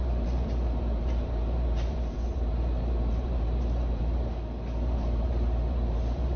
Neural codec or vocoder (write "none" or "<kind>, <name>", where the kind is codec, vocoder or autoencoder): vocoder, BigVGAN v2